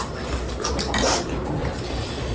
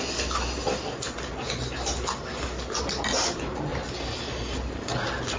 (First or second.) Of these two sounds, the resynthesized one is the first